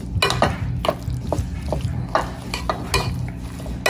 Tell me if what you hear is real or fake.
real